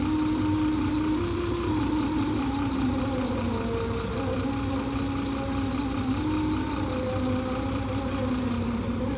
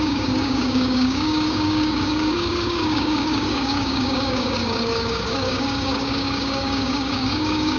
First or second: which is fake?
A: second